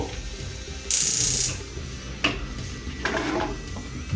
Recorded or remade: recorded